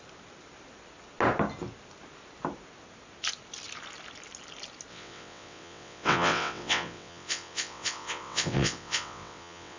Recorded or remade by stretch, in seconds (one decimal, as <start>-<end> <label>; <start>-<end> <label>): 0.0-4.9 recorded; 4.9-9.8 remade

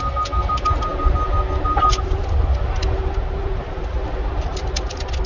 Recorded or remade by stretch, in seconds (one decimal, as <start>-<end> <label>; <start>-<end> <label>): 0.0-5.3 recorded

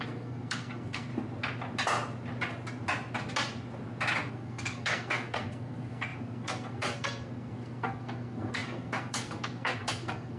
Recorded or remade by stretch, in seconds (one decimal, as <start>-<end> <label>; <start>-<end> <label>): 0.0-1.1 remade; 1.1-4.3 recorded; 4.3-10.4 remade

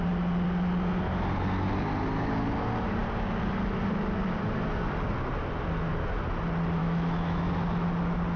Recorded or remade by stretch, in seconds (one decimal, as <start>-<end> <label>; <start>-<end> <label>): 0.0-6.8 recorded; 6.8-7.5 remade; 7.5-8.4 recorded

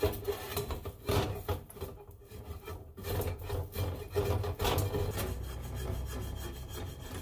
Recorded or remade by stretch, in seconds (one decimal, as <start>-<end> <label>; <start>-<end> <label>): 0.0-7.2 recorded

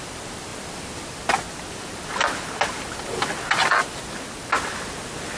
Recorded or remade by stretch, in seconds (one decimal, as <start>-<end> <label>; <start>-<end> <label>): 0.0-0.5 recorded; 0.5-3.7 remade; 3.7-5.4 recorded